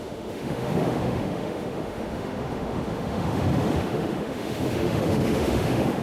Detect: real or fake fake